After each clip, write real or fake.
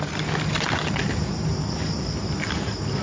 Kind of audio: real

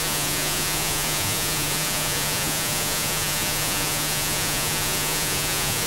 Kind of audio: fake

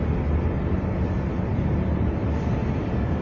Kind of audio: real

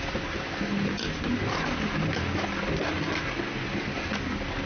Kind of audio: real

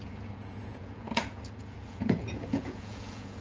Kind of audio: fake